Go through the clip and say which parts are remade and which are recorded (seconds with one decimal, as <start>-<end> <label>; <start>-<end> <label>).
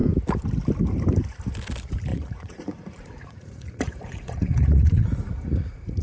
0.0-2.1 recorded; 2.1-6.0 remade